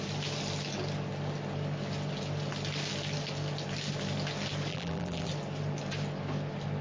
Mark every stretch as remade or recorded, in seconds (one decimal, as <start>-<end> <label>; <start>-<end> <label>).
0.0-4.7 recorded; 4.7-5.3 remade; 5.3-6.8 recorded